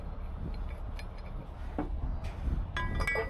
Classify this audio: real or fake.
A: real